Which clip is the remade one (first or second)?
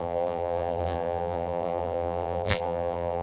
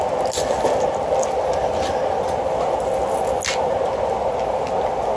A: first